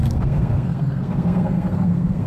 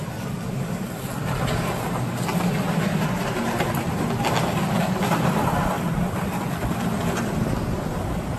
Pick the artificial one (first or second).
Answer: first